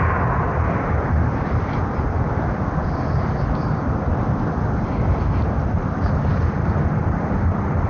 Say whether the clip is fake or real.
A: real